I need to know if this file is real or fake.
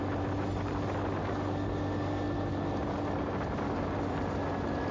real